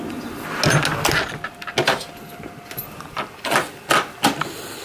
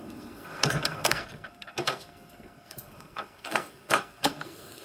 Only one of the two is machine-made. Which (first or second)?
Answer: second